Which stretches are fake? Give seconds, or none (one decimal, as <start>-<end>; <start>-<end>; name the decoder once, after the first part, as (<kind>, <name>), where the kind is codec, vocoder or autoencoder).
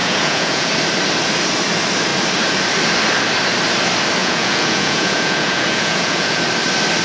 0.0-0.7 (vocoder, Vocos); 4.2-6.4